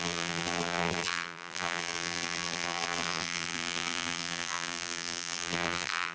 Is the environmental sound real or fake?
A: fake